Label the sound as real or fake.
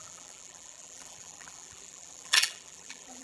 fake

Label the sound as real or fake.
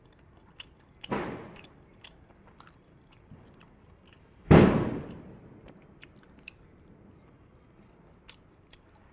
fake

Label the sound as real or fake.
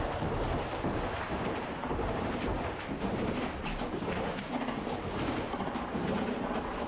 fake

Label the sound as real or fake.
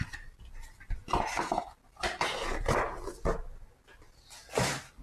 fake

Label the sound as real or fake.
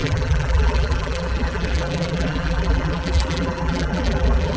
fake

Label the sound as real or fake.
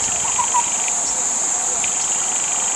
real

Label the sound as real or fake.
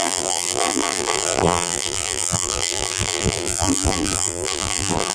fake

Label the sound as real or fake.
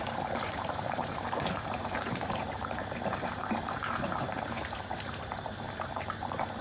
fake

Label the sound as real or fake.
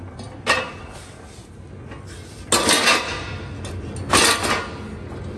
real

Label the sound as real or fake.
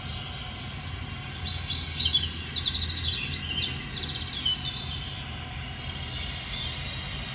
real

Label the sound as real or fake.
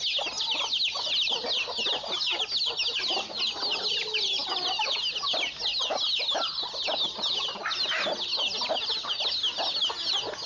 real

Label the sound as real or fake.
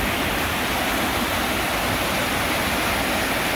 real